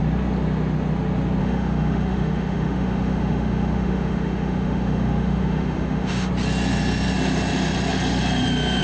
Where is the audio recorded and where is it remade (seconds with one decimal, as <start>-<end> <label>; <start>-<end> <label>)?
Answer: 0.0-1.4 recorded; 1.4-6.3 remade; 6.3-8.8 recorded